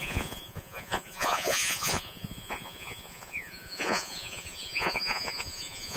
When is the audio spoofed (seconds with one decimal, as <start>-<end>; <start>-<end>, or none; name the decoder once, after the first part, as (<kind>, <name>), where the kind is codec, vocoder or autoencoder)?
0.0-6.0 (vocoder, Vocos)